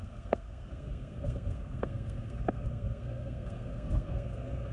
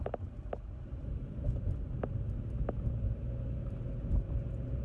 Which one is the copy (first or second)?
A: first